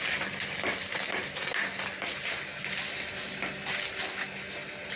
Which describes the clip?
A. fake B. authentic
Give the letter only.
B